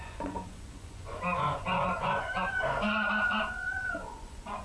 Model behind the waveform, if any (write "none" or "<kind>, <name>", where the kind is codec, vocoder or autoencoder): vocoder, Vocos